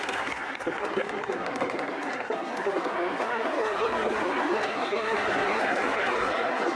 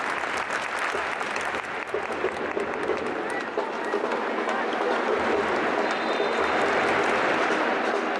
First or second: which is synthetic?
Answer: first